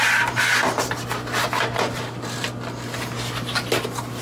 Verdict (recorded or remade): recorded